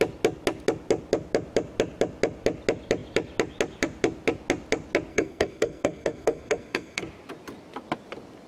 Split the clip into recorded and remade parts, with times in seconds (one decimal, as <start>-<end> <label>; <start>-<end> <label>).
0.0-5.1 recorded; 5.1-7.0 remade; 7.0-8.5 recorded